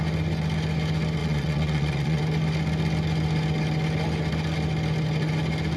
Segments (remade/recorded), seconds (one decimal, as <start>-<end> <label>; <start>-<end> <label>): 0.0-1.2 recorded; 1.2-2.2 remade; 2.2-5.8 recorded